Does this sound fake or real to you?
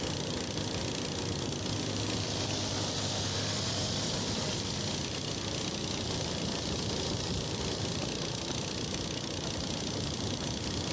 fake